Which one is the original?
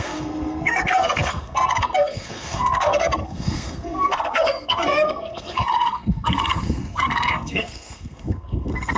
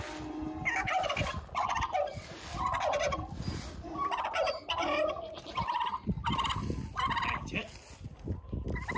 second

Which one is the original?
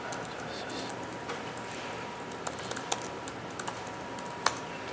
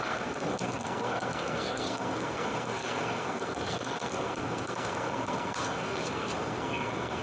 first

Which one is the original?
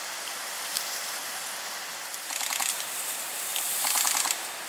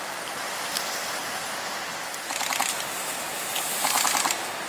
second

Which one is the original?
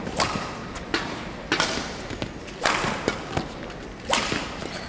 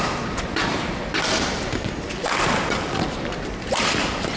first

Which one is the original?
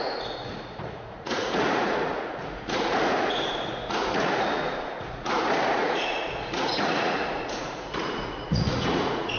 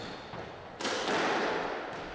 second